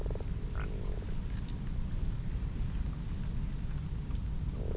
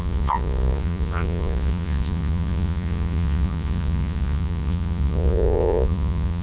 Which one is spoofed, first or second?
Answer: second